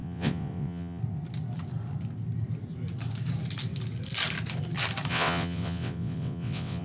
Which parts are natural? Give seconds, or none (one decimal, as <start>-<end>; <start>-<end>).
1.0-5.1